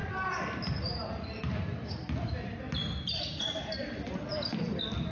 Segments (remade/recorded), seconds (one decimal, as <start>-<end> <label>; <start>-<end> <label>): 0.0-5.1 recorded